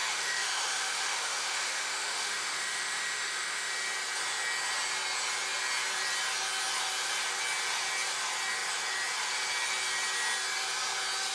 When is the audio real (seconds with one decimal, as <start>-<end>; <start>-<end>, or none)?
3.7-11.3